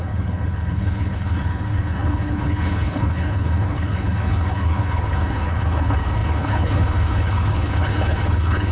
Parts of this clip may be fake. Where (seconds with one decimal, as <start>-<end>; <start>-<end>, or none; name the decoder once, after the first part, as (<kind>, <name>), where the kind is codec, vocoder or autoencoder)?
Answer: 0.0-8.7 (codec, HILCodec)